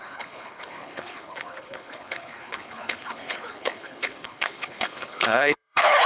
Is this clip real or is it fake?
fake